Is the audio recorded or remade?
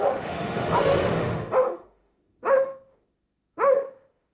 remade